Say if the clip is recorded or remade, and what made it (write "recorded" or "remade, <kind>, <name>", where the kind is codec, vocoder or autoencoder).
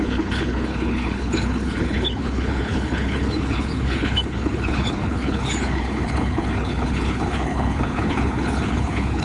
remade, codec, HILCodec